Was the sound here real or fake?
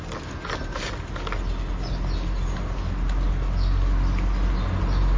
real